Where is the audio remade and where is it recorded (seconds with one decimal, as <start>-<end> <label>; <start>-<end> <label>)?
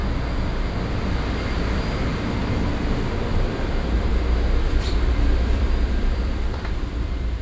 0.0-3.5 recorded; 3.5-4.1 remade; 4.1-4.7 recorded; 4.7-7.4 remade